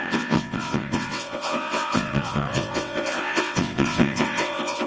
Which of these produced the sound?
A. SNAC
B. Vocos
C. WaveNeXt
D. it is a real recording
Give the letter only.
C